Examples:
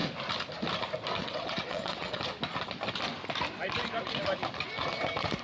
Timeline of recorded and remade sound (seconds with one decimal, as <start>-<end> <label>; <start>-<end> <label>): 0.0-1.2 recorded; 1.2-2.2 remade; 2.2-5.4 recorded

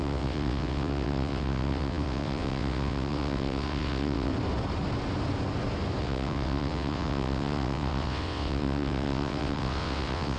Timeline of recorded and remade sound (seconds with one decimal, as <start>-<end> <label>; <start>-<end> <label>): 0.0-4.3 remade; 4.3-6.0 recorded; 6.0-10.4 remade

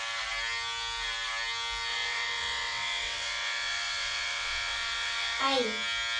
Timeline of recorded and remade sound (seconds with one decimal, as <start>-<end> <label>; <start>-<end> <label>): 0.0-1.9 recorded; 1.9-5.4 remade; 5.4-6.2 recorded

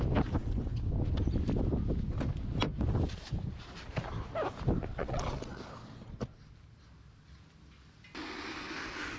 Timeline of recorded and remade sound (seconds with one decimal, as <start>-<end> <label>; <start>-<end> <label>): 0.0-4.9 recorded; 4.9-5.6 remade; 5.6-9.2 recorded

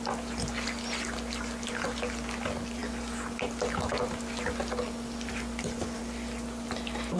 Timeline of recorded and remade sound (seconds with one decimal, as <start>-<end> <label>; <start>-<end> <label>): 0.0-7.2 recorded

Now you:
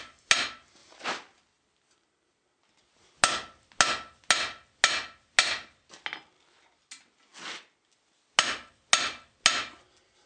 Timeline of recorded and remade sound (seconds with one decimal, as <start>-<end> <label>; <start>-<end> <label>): 0.0-10.3 recorded

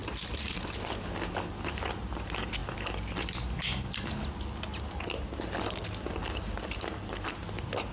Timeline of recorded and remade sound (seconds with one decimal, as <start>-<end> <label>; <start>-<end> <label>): 0.0-7.9 recorded